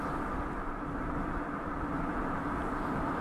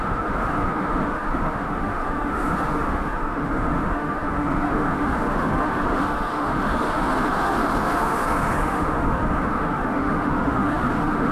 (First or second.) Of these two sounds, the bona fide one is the first